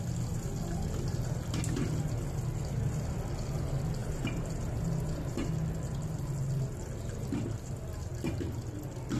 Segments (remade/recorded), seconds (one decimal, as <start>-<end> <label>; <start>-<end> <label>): 0.0-4.0 recorded; 4.0-5.5 remade; 5.5-9.2 recorded